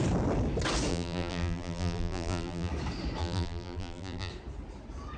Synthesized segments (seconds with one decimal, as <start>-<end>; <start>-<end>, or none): 0.9-2.7; 3.2-4.3